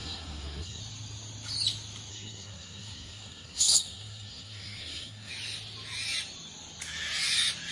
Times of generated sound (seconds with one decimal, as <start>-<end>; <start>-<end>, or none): 0.0-0.8; 2.1-5.3